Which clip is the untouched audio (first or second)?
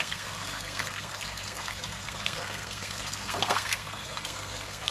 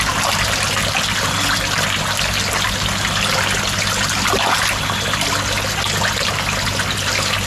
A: second